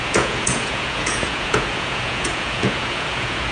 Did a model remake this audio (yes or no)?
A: yes